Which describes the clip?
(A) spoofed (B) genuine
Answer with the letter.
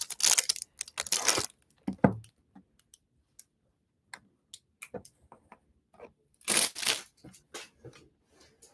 B